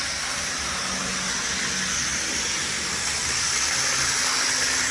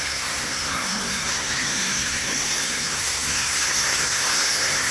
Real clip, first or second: first